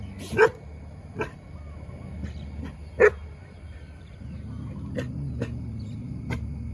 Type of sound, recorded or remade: recorded